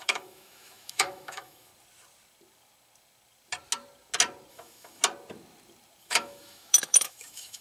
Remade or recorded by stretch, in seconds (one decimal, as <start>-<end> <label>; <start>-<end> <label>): 0.0-1.7 remade; 1.7-4.5 recorded; 4.5-5.0 remade; 5.0-6.0 recorded; 6.0-7.6 remade